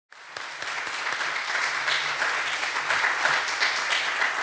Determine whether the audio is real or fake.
real